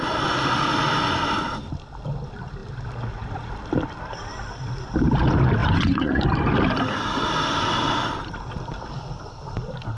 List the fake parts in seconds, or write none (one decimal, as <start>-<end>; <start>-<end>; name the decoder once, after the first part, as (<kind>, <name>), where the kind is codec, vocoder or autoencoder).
5.6-6.2 (vocoder, Vocos)